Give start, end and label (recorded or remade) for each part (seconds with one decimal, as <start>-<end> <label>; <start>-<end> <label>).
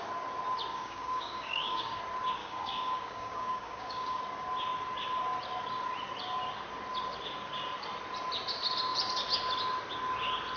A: 0.0-0.7 recorded; 0.7-2.0 remade; 2.0-2.4 recorded; 2.4-4.2 remade; 4.2-10.6 recorded